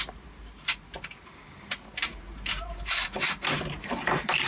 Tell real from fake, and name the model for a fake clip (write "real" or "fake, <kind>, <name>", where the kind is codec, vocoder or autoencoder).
fake, vocoder, BigVGAN v2